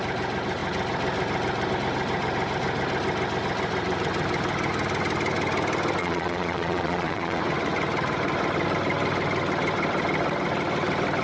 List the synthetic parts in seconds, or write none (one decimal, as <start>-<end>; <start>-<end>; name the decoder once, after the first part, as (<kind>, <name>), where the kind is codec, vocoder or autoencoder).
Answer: 6.0-7.4 (vocoder, Vocos)